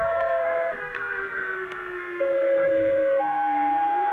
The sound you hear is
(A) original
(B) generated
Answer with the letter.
B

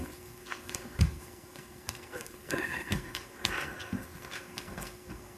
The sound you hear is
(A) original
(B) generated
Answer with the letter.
B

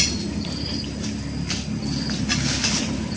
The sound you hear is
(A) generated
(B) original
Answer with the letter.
B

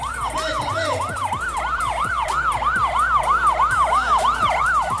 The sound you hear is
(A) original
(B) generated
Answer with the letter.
A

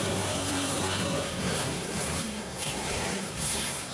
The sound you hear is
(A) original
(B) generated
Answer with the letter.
B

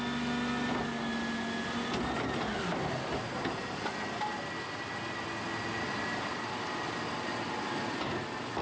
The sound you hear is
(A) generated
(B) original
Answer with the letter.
B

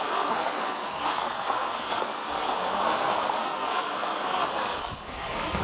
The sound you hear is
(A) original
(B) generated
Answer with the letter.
B